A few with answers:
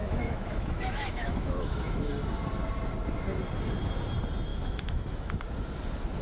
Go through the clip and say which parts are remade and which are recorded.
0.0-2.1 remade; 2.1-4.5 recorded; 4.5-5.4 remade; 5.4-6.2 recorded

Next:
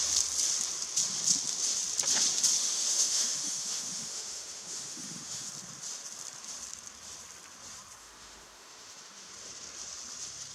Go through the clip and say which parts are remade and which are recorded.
0.0-2.6 recorded; 2.6-5.5 remade; 5.5-8.0 recorded; 8.0-9.3 remade; 9.3-10.5 recorded